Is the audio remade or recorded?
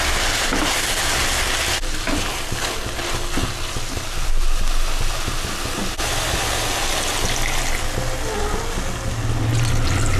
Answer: recorded